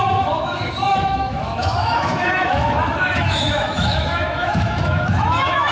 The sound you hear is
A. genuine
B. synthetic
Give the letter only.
B